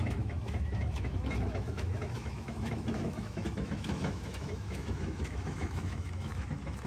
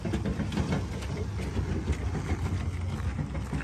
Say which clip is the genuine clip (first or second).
second